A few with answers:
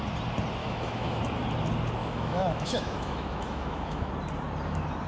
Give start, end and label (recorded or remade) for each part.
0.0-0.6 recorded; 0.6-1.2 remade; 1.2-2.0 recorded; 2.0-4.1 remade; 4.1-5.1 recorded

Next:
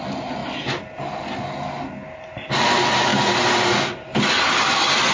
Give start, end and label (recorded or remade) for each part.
0.0-5.1 recorded

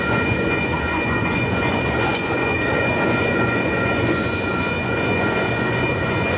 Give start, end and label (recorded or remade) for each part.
0.0-6.4 remade